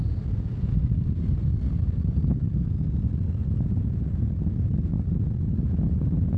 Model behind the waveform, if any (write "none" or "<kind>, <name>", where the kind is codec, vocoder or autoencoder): none